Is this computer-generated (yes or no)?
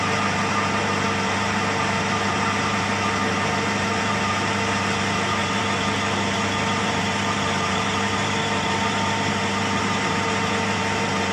yes